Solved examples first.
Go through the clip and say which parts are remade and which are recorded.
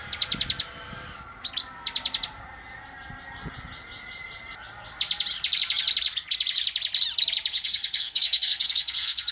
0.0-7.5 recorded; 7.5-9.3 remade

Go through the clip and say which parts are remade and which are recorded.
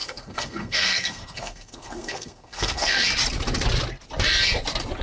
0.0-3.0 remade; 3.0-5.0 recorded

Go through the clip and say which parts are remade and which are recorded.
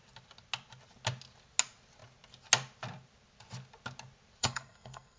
0.0-4.4 recorded; 4.4-5.2 remade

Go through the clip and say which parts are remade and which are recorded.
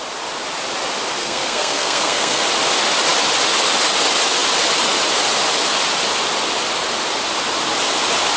0.0-1.2 recorded; 1.2-2.4 remade; 2.4-8.4 recorded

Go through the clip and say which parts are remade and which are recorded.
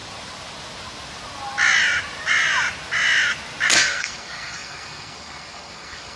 0.0-3.7 recorded; 3.7-6.2 remade